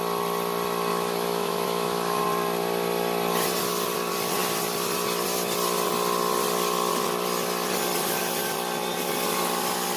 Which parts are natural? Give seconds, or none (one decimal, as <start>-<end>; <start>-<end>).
0.0-0.9; 2.2-10.0